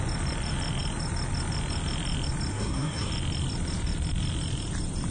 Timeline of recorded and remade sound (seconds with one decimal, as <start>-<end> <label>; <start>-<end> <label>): 0.0-2.5 recorded; 2.5-3.1 remade; 3.1-5.1 recorded